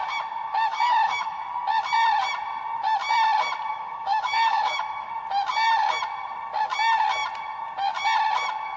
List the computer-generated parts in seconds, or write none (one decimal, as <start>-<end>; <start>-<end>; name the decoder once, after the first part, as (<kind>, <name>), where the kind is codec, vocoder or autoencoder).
0.7-1.4 (autoencoder, DAC-VAE); 3.7-5.1